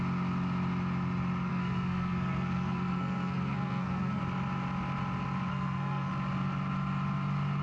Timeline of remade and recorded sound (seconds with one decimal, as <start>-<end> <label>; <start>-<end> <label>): 0.0-1.5 recorded; 1.5-4.2 remade; 4.2-5.5 recorded; 5.5-6.1 remade; 6.1-7.6 recorded